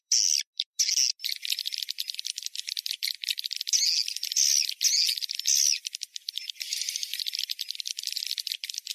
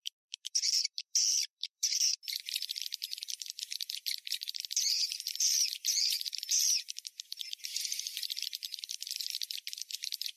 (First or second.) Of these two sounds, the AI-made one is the second